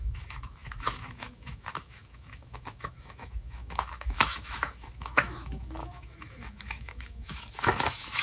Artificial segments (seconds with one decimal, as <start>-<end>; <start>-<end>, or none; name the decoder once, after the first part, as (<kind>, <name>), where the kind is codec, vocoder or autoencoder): 0.0-8.2 (autoencoder, DAC-VAE)